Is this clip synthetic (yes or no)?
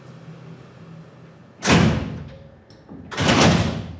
no